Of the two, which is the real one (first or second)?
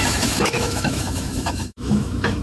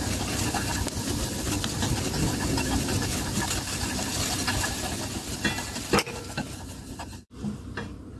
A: second